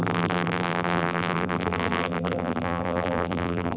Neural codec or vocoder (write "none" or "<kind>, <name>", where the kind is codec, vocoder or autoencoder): vocoder, BigVGAN v2